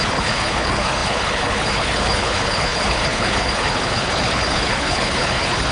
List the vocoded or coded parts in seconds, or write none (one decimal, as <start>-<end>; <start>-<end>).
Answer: 0.0-5.7

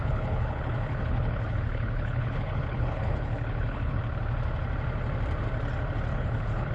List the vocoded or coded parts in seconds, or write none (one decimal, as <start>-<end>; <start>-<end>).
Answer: 0.0-4.0; 6.1-6.7

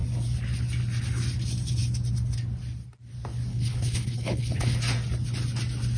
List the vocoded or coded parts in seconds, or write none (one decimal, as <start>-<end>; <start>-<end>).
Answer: 3.5-4.8

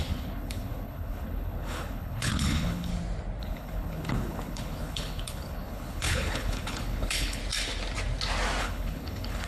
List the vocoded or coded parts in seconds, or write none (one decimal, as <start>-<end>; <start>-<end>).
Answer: 0.0-2.9; 3.4-7.4; 8.6-9.5

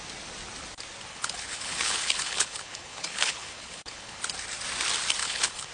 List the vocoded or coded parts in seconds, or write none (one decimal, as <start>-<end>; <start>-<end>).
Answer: 1.1-4.2; 5.2-5.7

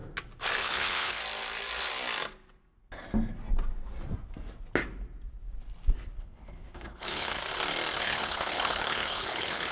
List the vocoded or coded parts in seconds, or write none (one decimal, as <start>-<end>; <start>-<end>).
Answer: 0.6-1.2; 6.2-7.4; 8.0-9.7